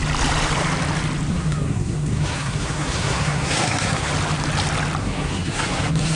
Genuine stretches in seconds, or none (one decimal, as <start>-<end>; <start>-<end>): 0.0-1.3; 4.1-5.0